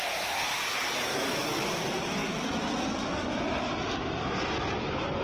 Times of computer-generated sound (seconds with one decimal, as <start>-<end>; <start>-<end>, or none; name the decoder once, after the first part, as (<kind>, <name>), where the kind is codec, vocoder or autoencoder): 1.1-1.7 (autoencoder, DAC-VAE)